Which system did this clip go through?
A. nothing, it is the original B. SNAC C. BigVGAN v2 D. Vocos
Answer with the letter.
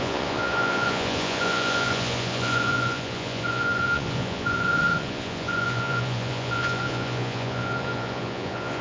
D